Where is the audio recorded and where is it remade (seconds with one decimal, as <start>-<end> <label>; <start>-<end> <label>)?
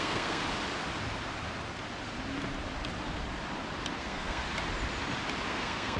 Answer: 0.0-0.4 remade; 0.4-4.0 recorded; 4.0-4.4 remade; 4.4-5.5 recorded; 5.5-6.0 remade